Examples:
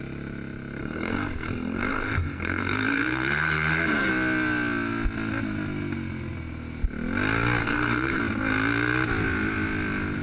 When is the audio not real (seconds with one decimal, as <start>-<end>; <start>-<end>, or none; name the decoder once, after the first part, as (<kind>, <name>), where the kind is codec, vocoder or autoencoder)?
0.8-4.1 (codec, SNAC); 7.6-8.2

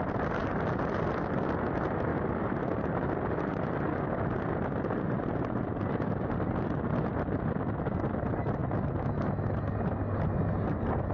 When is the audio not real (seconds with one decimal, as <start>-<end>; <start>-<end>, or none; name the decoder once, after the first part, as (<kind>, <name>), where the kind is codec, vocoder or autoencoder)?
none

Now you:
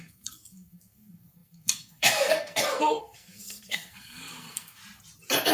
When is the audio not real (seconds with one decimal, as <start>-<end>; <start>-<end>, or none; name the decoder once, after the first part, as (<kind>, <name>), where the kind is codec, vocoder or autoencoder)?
0.0-4.8 (codec, SNAC)